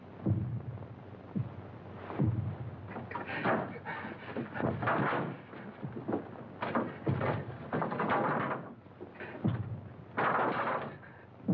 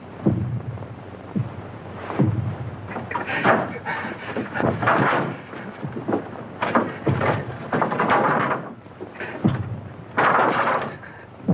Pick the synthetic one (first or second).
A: second